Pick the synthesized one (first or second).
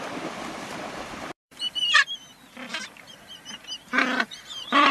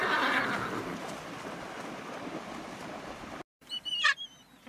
first